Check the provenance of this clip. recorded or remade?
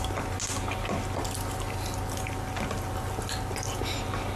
recorded